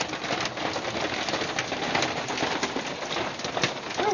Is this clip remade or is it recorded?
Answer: recorded